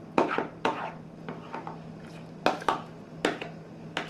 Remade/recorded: recorded